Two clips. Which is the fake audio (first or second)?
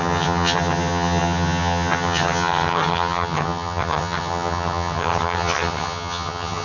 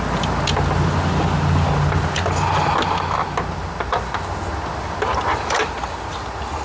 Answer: first